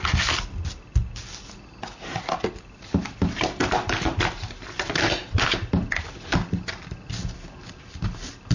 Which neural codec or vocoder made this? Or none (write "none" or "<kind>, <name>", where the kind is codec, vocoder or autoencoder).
none